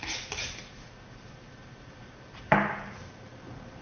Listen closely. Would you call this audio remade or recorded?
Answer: remade